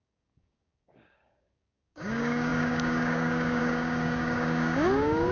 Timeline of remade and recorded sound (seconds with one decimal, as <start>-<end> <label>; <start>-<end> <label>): 0.0-5.3 remade